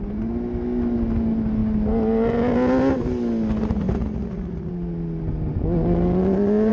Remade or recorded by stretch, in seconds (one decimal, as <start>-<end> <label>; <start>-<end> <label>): 0.0-3.6 recorded; 3.6-4.7 remade; 4.7-6.7 recorded